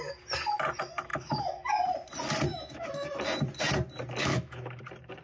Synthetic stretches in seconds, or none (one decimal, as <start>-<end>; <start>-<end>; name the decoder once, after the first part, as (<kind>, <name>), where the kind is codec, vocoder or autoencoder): 1.1-1.7 (autoencoder, DAC-VAE); 2.5-3.2; 4.2-4.8